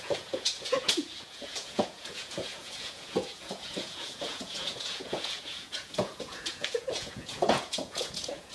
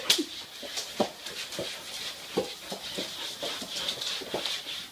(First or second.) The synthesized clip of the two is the first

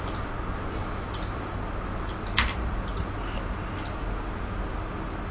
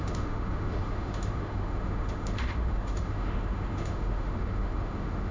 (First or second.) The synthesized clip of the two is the second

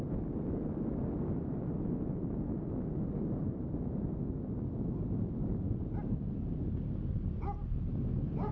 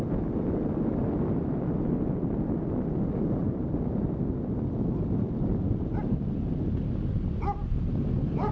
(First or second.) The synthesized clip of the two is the second